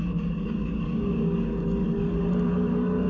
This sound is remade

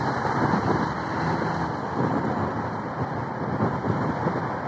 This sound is recorded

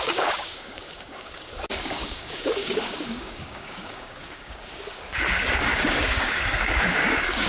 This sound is remade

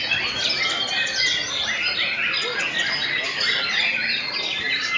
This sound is recorded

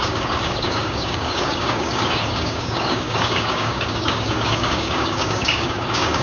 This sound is remade